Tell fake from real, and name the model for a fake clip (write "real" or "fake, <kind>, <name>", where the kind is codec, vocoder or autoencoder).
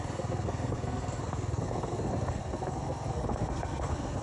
fake, codec, SNAC